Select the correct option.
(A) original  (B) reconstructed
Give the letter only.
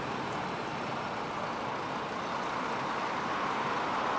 A